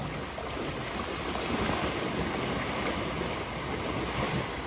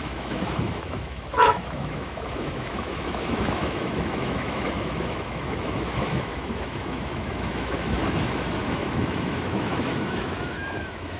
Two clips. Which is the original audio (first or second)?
first